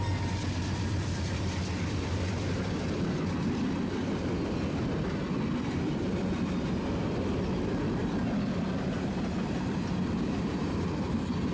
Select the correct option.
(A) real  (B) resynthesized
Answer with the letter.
A